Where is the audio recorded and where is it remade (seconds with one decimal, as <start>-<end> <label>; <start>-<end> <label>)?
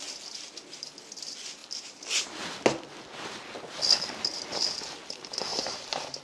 0.0-5.5 recorded; 5.5-6.2 remade